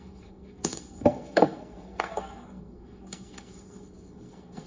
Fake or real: fake